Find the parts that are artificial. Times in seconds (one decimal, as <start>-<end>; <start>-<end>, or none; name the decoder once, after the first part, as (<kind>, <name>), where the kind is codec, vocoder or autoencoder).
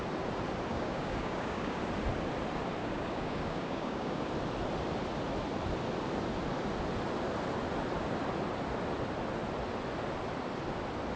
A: 0.7-1.8 (codec, DAC); 2.8-4.3